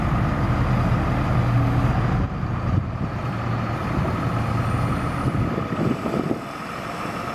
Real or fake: real